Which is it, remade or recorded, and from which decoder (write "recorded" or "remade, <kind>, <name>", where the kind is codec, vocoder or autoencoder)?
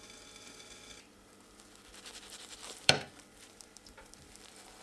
remade, vocoder, BigVGAN v2